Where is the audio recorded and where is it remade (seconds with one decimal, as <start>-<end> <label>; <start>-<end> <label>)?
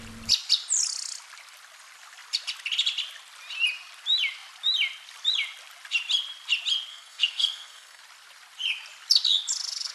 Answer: 0.0-6.9 recorded; 6.9-8.0 remade; 8.0-9.9 recorded